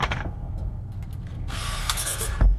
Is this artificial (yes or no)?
yes